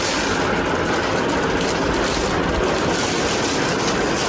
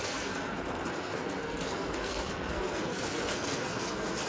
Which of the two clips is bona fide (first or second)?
first